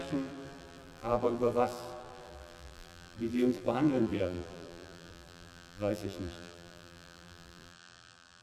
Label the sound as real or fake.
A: fake